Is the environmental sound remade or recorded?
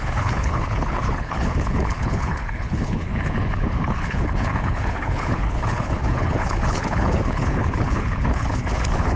remade